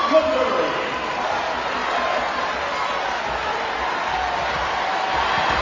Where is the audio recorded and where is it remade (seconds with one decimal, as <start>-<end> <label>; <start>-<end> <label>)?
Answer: 0.0-5.6 recorded